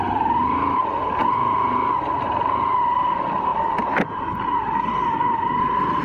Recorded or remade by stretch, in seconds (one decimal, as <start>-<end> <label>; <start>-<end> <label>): 0.0-6.0 recorded